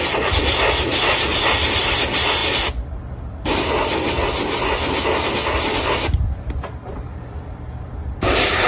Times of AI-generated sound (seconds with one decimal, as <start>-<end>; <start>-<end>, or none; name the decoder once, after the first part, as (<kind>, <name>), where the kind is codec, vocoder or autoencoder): none

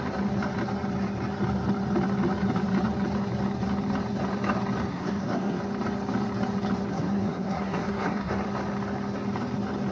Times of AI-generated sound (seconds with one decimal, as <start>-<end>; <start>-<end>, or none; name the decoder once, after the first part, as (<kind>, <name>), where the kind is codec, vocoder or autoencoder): 4.9-5.6 (codec, SNAC); 6.9-8.3